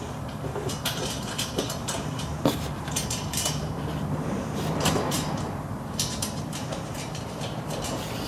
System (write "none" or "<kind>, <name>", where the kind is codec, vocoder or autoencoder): vocoder, BigVGAN v2